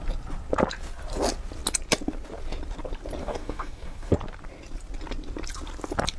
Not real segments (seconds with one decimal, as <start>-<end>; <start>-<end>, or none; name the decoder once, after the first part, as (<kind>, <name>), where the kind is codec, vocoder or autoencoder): 3.2-4.1 (codec, DAC)